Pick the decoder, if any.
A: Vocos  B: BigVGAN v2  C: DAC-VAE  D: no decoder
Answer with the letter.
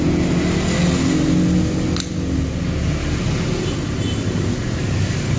D